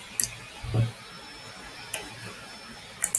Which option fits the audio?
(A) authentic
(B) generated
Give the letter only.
A